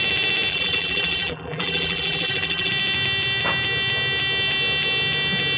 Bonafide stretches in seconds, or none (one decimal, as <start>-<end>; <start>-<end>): 0.0-0.5; 2.7-5.6